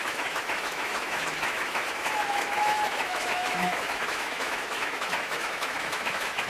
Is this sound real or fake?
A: fake